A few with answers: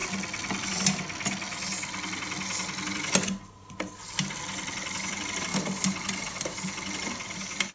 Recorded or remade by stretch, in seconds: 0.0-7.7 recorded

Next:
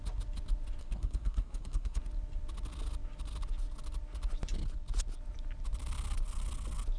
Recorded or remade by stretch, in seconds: 0.0-0.8 recorded; 0.8-2.0 remade; 2.0-7.0 recorded

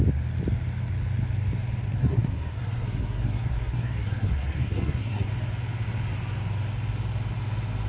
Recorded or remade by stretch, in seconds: 0.0-1.9 recorded; 1.9-5.3 remade; 5.3-7.9 recorded

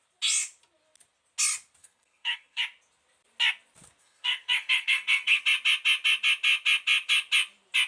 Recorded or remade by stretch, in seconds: 0.0-1.8 recorded; 1.8-2.6 remade; 2.6-4.0 recorded; 4.0-5.4 remade; 5.4-7.9 recorded

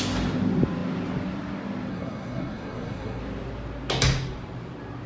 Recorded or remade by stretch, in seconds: 0.0-1.9 recorded; 1.9-3.2 remade; 3.2-5.1 recorded

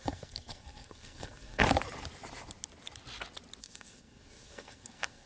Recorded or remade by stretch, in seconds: 0.0-1.6 remade; 1.6-3.6 recorded; 3.6-5.3 remade

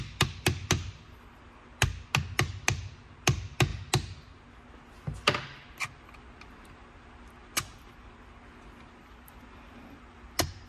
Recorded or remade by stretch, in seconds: 0.0-10.7 recorded

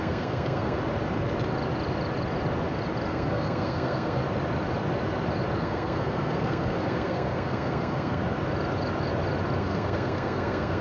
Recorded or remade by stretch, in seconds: 0.0-0.8 remade; 0.8-3.1 recorded; 3.1-4.2 remade; 4.2-5.6 recorded; 5.6-8.2 remade; 8.2-9.6 recorded; 9.6-10.8 remade